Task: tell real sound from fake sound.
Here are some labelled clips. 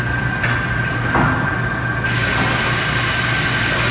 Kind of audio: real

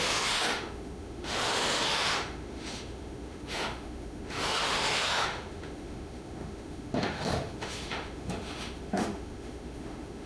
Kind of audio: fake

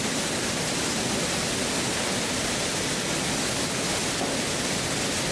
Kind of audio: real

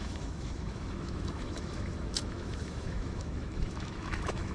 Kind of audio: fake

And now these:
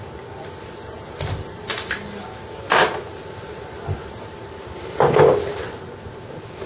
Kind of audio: real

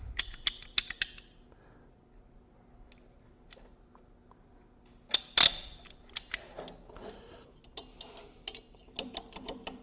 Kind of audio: real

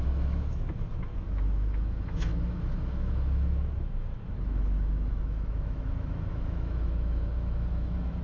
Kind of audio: fake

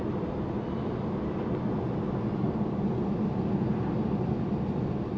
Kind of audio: real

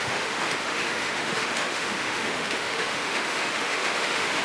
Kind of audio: fake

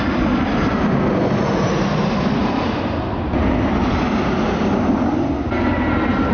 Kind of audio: real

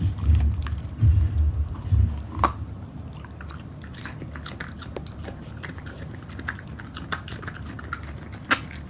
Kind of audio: real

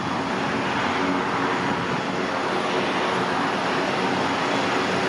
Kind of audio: real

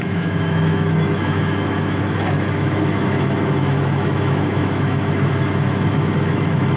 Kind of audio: fake